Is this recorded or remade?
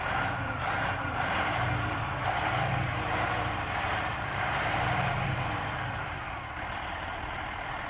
remade